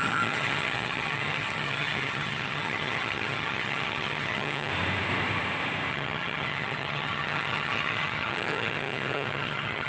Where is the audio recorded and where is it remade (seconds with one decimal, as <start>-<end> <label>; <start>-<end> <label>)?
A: 0.0-4.7 remade; 4.7-5.9 recorded; 5.9-9.9 remade